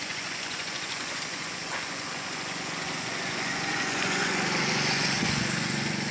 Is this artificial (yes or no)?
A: yes